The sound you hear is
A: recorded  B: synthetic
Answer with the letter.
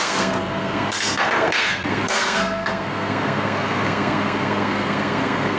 B